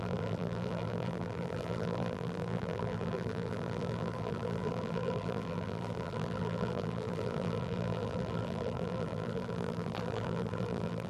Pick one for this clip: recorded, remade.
remade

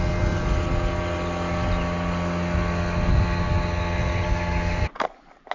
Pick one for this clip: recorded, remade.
recorded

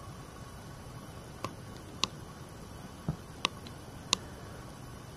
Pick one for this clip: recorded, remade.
remade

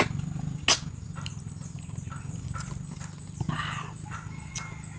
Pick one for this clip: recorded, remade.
recorded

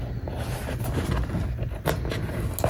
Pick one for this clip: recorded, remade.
recorded